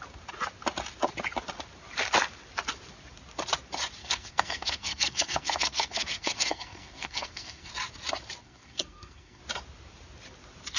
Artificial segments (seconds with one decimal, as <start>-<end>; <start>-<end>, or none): 4.0-7.7; 8.4-9.4